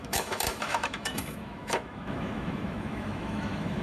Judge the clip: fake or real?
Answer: fake